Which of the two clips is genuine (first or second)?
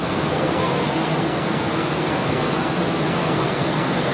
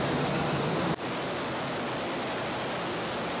second